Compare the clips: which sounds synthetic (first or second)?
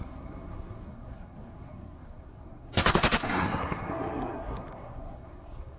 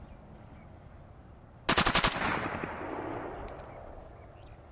first